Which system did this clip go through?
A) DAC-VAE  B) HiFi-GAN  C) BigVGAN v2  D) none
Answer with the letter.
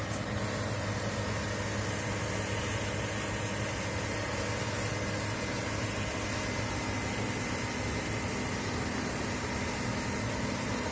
D